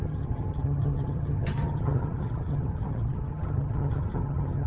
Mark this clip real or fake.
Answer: fake